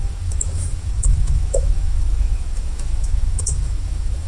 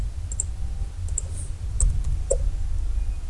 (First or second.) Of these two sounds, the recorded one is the second